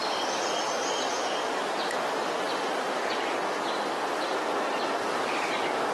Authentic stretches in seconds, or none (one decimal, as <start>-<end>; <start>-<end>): 3.5-4.3; 4.9-5.9